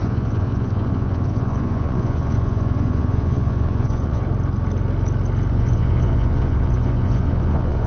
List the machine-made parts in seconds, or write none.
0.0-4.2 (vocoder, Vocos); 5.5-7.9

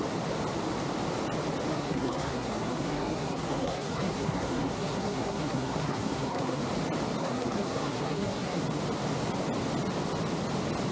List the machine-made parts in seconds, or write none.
1.7-6.6 (codec, SNAC); 7.2-8.6

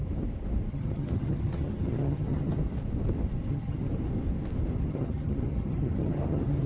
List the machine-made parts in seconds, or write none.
0.7-2.6 (vocoder, HiFi-GAN); 3.5-3.9; 4.8-6.7